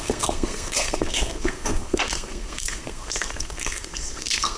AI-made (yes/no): yes